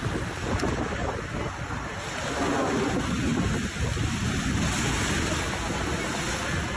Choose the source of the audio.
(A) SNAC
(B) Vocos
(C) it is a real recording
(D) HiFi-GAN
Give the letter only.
C